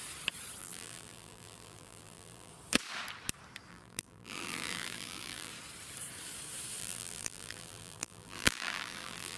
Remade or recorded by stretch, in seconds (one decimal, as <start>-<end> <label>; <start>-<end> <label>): 0.0-0.6 recorded; 0.6-2.5 remade; 2.5-3.7 recorded; 3.7-5.5 remade; 5.5-6.8 recorded; 6.8-9.4 remade